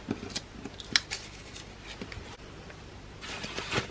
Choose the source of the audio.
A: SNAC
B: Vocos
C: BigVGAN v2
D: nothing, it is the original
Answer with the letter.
D